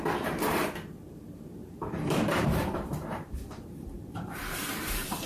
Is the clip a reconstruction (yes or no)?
yes